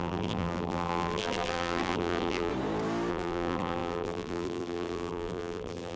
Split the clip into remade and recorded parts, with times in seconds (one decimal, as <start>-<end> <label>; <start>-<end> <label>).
0.0-2.5 remade; 2.5-3.1 recorded; 3.1-6.0 remade